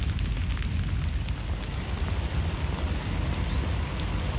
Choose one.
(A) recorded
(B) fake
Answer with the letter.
A